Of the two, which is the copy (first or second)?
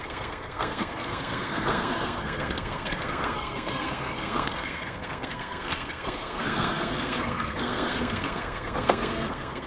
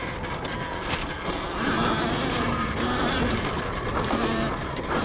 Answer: first